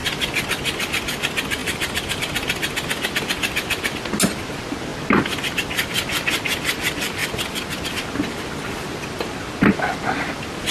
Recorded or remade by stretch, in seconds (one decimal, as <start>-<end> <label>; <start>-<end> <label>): 0.0-1.6 recorded; 1.6-2.2 remade; 2.2-10.7 recorded